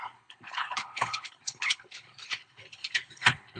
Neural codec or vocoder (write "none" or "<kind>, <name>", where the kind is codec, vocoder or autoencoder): codec, HILCodec